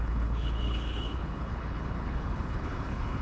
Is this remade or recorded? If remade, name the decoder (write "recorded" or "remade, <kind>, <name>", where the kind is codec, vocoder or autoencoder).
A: remade, codec, HILCodec